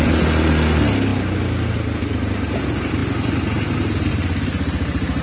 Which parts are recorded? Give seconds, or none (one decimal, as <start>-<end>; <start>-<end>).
0.0-5.2